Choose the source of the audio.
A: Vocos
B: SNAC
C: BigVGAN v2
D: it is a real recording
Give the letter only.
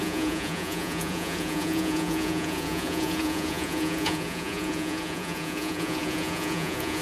A